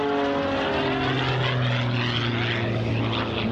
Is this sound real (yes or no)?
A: yes